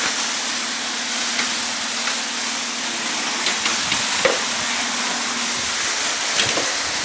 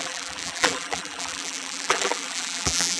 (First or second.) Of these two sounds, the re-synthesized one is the second